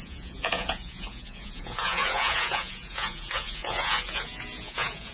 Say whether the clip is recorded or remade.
remade